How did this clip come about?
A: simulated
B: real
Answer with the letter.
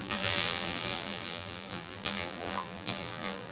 A